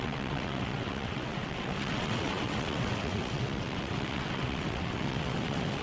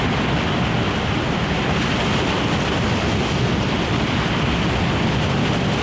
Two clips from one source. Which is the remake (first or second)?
first